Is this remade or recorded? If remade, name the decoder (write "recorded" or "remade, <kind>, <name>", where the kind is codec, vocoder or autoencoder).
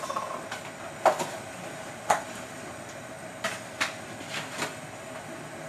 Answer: recorded